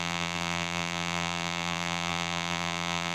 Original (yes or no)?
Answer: no